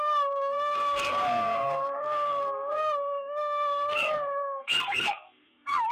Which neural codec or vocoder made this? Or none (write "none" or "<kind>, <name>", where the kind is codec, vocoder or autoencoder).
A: codec, SNAC